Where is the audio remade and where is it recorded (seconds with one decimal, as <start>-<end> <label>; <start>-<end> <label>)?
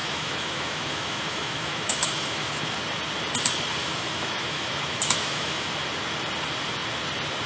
0.0-2.6 remade; 2.6-3.8 recorded; 3.8-5.7 remade; 5.7-7.5 recorded